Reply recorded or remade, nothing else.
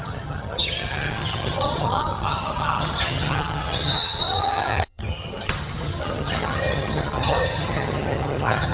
remade